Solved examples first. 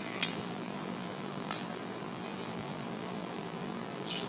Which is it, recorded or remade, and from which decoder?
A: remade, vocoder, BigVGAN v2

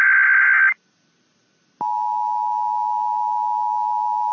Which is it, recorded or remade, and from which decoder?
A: recorded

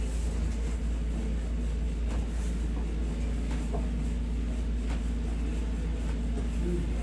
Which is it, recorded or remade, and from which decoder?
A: recorded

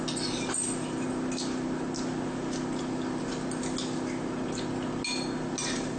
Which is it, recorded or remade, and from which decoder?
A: recorded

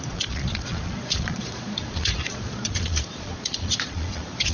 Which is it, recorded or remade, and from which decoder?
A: remade, vocoder, Vocos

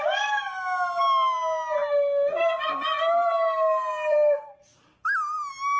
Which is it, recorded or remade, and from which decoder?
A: recorded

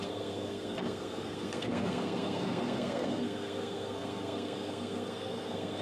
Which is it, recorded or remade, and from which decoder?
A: remade, codec, SNAC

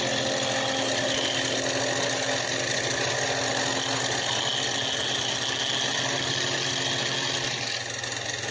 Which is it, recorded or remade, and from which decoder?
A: recorded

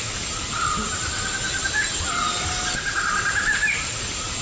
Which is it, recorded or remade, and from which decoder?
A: recorded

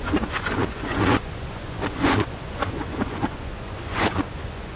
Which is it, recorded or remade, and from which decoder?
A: remade, vocoder, Vocos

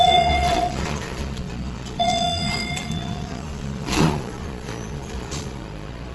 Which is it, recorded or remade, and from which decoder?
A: remade, vocoder, Vocos